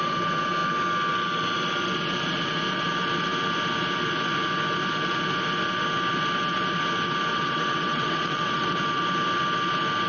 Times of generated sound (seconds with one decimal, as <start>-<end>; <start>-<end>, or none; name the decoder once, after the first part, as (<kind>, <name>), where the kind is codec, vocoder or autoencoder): 7.3-8.8 (vocoder, WaveNeXt)